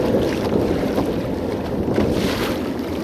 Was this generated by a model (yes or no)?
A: no